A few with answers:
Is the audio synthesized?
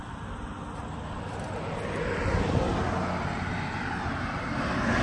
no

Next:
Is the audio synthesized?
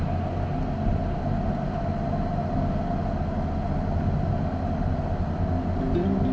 no